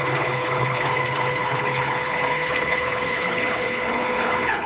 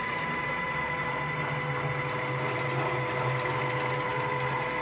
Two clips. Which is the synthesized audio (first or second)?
first